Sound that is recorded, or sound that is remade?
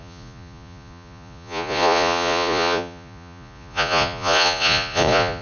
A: remade